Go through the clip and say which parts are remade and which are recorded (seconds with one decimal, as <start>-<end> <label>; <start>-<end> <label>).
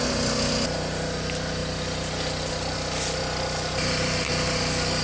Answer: 0.0-5.0 recorded